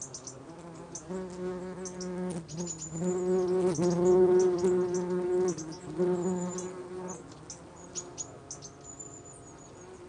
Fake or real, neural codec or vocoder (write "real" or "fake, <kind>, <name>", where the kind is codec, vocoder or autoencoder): real